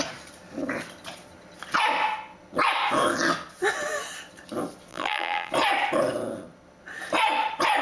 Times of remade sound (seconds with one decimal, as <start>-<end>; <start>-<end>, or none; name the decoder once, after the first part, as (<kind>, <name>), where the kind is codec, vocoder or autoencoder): 4.9-5.5 (vocoder, BigVGAN v2)

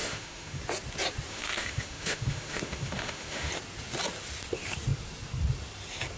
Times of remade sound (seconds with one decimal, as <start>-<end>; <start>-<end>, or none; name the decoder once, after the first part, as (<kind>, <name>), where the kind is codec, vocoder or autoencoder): 0.0-0.6 (autoencoder, DAC-VAE); 1.3-3.5

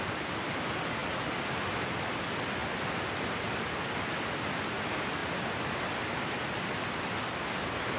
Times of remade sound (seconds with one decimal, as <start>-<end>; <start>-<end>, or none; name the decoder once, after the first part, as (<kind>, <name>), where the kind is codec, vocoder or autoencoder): none

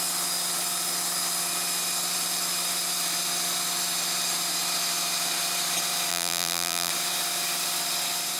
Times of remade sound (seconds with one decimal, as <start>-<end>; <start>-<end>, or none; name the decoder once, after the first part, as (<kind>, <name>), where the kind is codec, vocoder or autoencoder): 6.1-6.9 (vocoder, BigVGAN v2)

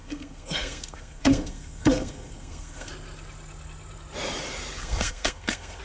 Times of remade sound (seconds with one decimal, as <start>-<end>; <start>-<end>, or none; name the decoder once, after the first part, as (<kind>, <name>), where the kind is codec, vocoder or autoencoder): 0.0-2.9 (codec, SNAC); 4.8-5.8

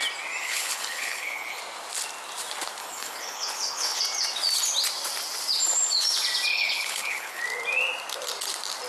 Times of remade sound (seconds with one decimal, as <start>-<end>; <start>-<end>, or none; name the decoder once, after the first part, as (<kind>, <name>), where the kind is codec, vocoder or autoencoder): 0.4-1.6 (codec, HILCodec); 2.8-4.0; 6.5-7.4

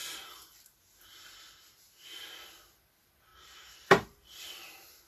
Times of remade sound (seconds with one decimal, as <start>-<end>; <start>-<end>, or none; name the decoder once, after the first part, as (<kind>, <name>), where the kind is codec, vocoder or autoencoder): 0.0-0.6 (vocoder, BigVGAN v2); 3.3-4.4